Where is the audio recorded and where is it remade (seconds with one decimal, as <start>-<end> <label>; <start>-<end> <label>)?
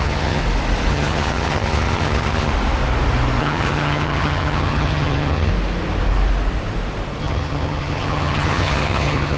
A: 0.0-0.4 remade; 0.4-0.9 recorded; 0.9-2.5 remade; 2.5-3.4 recorded; 3.4-5.5 remade; 5.5-7.2 recorded; 7.2-9.4 remade